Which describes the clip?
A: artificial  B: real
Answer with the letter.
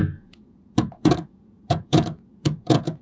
A